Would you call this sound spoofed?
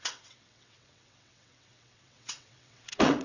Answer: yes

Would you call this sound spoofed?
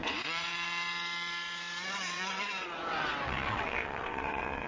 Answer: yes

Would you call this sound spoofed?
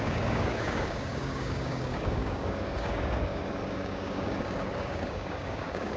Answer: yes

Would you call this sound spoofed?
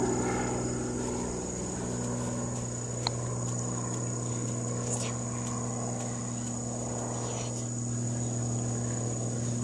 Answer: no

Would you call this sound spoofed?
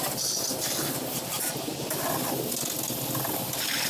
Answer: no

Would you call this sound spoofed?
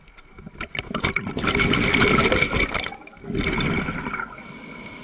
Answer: no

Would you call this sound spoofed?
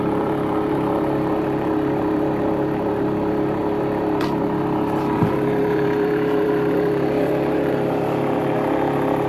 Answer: yes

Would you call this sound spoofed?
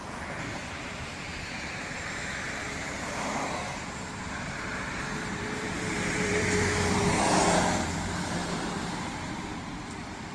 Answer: yes